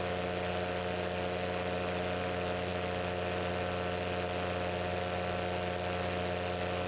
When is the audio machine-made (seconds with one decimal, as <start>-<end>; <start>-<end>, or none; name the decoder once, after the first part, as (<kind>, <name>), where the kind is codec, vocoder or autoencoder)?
none